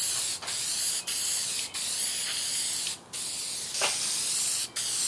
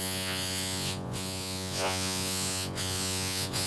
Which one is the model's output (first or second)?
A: second